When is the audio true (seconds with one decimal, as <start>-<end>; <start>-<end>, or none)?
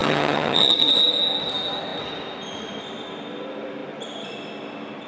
0.9-5.1